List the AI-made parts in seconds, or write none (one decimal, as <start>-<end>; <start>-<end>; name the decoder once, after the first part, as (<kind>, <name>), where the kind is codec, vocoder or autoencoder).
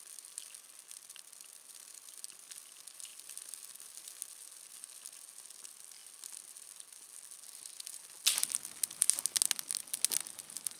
none